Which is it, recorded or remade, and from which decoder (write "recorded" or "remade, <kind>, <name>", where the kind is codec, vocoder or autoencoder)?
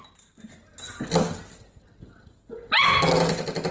recorded